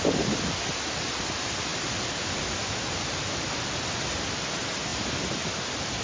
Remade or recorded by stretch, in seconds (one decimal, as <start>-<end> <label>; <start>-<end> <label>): 0.0-6.0 recorded